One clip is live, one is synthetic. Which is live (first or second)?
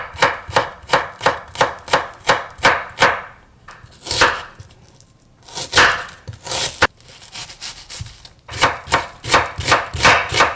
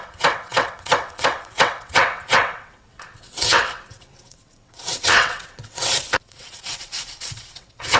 first